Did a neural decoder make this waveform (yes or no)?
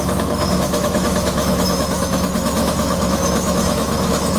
yes